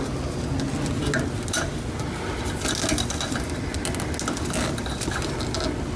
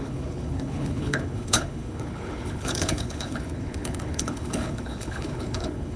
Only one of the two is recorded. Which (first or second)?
first